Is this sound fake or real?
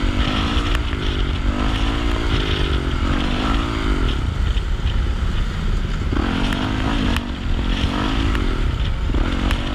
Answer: real